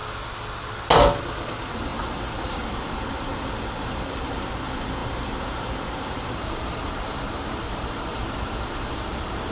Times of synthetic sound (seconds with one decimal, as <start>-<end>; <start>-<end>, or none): 1.2-9.5